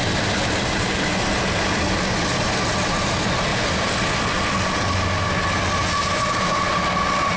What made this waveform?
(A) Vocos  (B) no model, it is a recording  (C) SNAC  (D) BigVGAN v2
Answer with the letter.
B